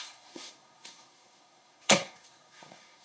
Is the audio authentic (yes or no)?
no